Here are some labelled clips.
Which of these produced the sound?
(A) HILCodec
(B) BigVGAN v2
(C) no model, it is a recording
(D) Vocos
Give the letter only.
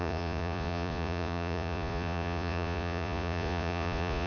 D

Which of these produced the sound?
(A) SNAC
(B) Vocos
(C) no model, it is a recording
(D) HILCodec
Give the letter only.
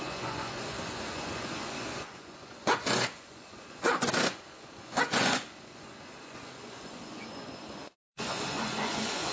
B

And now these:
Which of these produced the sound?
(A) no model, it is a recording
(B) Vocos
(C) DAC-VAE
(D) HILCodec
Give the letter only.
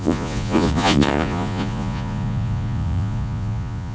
B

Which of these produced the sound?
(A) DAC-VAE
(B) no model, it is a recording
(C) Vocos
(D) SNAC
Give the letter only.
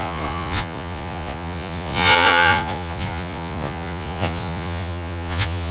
C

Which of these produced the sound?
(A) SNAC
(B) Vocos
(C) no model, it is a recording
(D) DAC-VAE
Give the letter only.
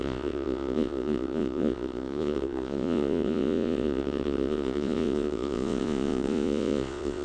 B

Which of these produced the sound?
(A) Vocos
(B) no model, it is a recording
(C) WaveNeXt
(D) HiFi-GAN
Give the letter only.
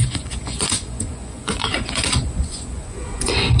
A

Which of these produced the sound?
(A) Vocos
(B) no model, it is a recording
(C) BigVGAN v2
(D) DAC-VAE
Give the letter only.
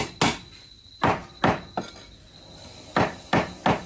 B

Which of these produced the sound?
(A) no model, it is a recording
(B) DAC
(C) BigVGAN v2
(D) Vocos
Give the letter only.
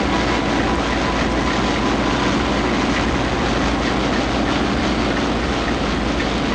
A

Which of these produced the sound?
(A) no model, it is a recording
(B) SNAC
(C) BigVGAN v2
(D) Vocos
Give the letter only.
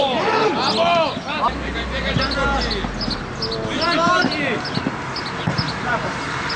A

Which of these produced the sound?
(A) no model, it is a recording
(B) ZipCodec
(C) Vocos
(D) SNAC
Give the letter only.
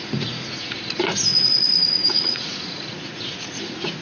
C